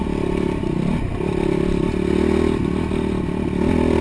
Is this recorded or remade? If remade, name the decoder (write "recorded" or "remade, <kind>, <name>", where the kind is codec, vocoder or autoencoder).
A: recorded